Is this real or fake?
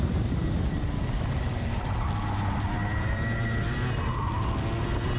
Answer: real